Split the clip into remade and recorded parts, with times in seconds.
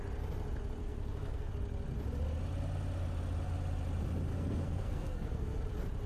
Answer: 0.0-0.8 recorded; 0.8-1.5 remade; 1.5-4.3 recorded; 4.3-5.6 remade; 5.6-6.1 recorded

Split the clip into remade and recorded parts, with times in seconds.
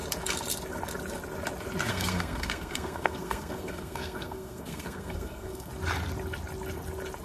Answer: 0.0-1.9 recorded; 1.9-5.7 remade; 5.7-7.2 recorded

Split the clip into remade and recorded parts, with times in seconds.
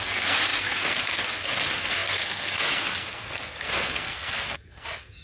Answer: 0.0-5.2 remade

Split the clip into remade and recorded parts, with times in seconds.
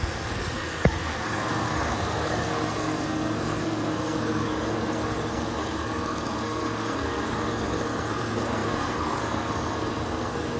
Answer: 0.0-10.6 remade